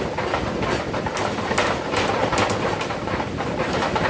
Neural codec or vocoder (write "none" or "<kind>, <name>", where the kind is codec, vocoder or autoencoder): none